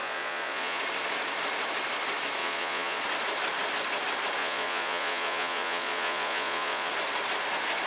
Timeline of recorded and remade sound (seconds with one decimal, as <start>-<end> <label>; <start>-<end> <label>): 0.0-0.8 remade; 0.8-2.4 recorded; 2.4-3.0 remade; 3.0-4.4 recorded; 4.4-6.9 remade; 6.9-7.9 recorded